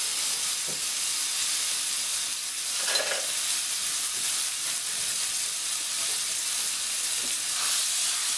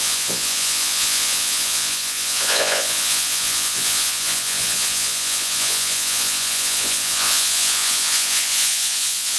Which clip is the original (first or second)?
first